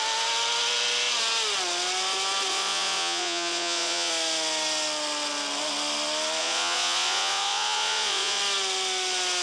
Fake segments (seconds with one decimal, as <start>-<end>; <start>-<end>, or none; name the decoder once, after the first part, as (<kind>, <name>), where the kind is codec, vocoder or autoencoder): 2.5-4.1 (vocoder, Vocos); 6.4-8.4